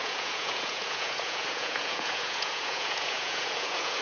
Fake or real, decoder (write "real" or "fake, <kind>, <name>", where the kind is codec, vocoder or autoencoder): fake, vocoder, Vocos